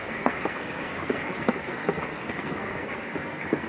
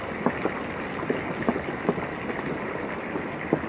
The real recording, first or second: second